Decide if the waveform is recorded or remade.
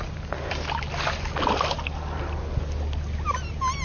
recorded